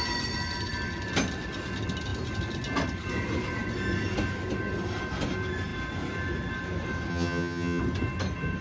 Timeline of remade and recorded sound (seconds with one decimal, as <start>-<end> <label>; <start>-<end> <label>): 0.0-7.1 recorded; 7.1-7.8 remade; 7.8-8.6 recorded